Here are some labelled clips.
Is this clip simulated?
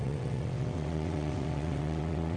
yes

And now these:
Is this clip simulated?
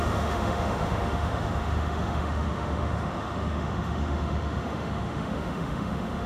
yes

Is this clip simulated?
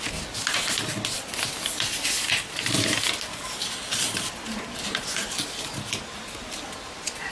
no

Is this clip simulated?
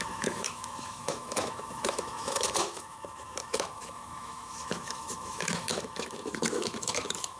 yes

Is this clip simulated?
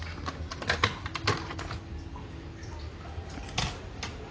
no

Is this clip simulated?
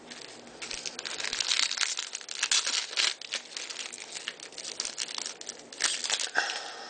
no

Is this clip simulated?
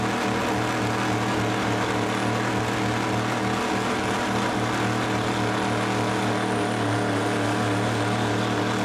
no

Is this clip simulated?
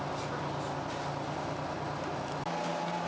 no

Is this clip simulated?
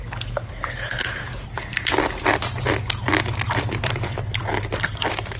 no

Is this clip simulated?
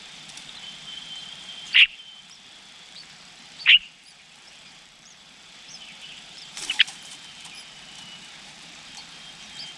yes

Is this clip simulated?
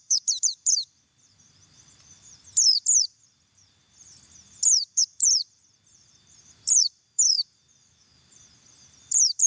yes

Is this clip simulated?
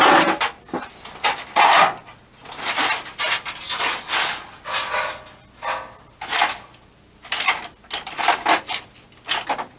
no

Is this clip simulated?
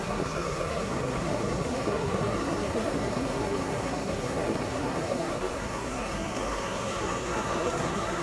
yes